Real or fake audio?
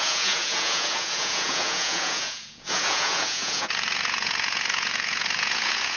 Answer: fake